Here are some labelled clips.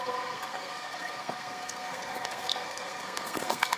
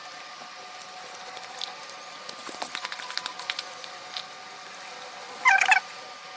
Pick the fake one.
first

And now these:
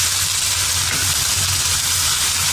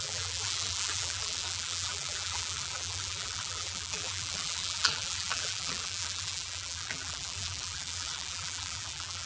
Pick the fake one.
second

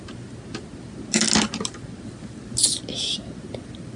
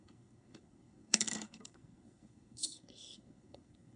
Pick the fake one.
second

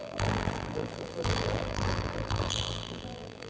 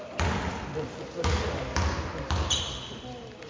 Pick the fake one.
first